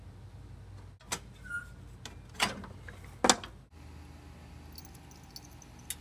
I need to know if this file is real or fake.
real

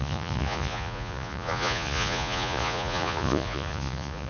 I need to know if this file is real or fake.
fake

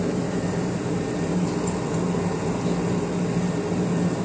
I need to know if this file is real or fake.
real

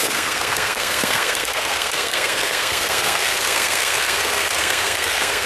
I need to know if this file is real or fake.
fake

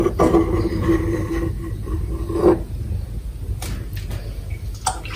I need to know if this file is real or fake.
real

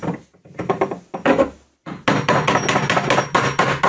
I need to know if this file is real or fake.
real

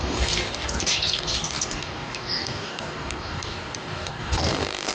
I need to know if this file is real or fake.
fake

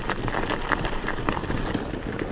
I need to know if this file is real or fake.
real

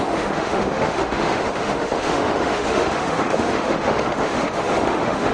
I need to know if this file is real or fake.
fake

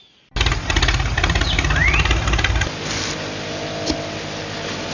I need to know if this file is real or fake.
real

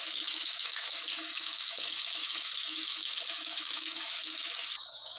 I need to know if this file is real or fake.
fake